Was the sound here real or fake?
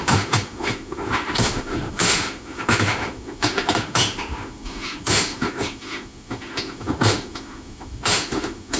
fake